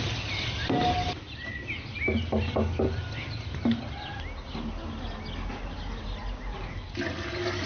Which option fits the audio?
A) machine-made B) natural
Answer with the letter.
B